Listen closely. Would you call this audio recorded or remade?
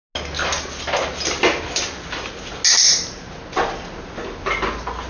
recorded